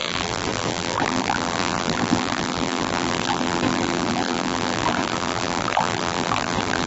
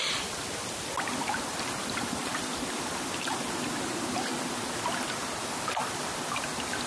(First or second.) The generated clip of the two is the first